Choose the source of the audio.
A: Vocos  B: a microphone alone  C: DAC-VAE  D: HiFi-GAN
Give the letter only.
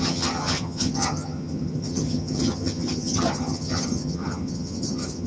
D